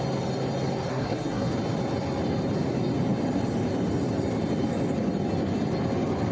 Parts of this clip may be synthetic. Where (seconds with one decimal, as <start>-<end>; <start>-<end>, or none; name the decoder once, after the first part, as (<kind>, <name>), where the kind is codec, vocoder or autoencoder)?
0.9-1.5 (codec, SNAC)